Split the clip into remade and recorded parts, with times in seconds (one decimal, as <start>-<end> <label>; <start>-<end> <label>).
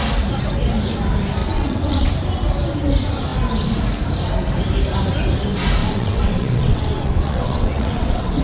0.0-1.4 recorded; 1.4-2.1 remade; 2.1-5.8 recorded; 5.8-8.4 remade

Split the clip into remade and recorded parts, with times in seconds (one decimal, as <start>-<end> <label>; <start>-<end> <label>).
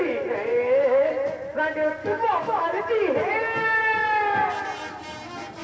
0.0-0.5 recorded; 0.5-1.1 remade; 1.1-2.0 recorded; 2.0-2.8 remade; 2.8-5.6 recorded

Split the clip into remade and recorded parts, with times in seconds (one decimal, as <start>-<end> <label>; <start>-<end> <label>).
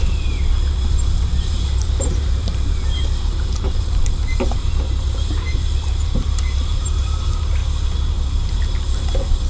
0.0-7.6 remade; 7.6-8.1 recorded; 8.1-9.5 remade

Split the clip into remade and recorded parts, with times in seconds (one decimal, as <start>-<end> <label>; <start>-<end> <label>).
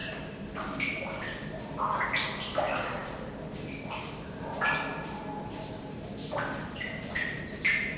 0.0-8.0 recorded